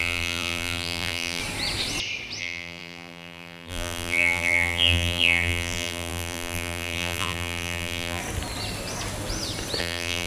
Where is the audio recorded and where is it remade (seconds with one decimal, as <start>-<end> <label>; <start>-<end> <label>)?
0.0-1.4 remade; 1.4-2.4 recorded; 2.4-8.2 remade; 8.2-9.8 recorded; 9.8-10.3 remade